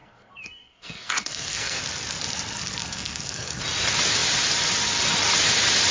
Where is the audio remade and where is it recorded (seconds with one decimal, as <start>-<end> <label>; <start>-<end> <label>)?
0.0-1.8 remade; 1.8-2.8 recorded; 2.8-3.6 remade; 3.6-5.9 recorded